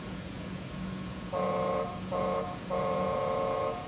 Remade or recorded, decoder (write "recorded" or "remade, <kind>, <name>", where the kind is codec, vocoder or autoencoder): remade, vocoder, Vocos